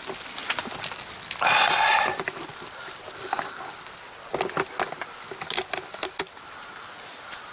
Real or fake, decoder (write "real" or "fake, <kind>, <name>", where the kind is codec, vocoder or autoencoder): real